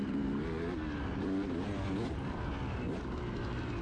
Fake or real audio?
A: real